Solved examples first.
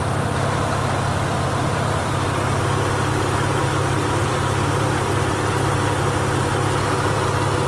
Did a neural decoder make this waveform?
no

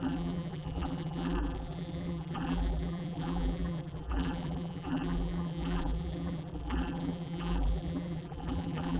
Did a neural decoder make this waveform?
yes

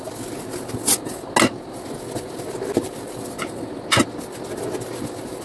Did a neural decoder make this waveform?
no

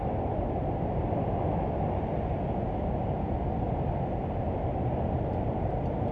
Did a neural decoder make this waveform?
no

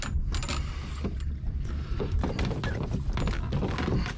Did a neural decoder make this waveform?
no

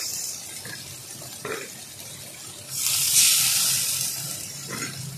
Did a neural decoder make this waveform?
yes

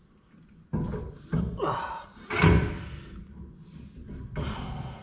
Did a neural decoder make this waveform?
no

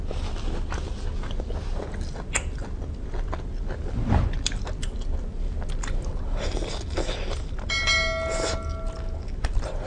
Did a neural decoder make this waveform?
no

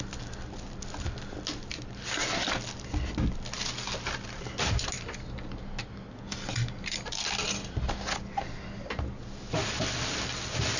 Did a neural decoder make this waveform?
no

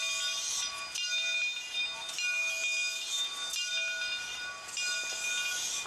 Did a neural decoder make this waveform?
no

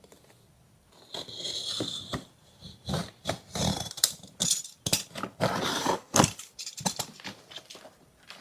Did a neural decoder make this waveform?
yes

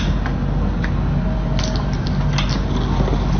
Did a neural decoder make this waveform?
no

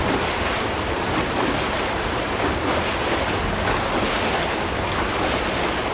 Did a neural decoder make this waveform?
no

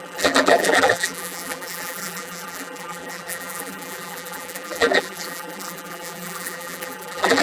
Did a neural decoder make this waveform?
yes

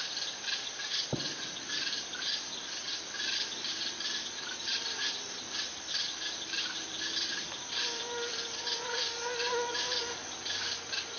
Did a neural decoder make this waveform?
yes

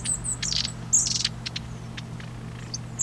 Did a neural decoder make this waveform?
no